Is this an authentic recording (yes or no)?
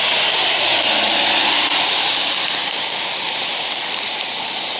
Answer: yes